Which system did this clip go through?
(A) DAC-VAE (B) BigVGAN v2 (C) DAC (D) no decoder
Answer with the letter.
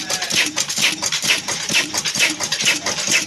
B